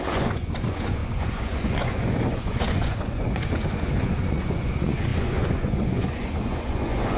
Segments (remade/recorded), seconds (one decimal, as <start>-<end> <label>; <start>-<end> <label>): 0.0-7.2 remade